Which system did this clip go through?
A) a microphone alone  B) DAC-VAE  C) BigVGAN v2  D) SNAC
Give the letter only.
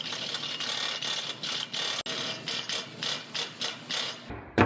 A